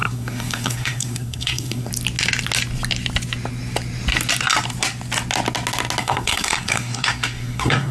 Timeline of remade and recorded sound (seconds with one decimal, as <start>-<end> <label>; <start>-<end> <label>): 0.0-1.9 remade; 1.9-6.0 recorded; 6.0-7.9 remade